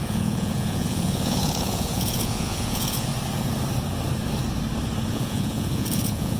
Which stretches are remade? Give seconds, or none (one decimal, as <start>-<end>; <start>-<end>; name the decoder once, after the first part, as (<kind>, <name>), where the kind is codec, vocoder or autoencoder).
0.0-3.1 (vocoder, Vocos); 5.1-6.4

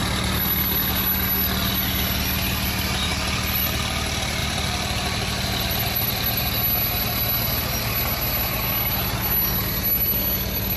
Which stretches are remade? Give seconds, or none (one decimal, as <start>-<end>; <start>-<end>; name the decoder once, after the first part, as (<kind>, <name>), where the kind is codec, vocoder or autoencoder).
3.1-3.6 (vocoder, BigVGAN v2); 4.4-6.4